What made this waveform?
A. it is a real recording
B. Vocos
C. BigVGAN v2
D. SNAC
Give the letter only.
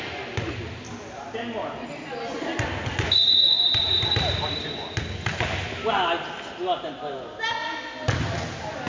A